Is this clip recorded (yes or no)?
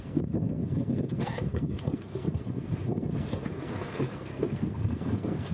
no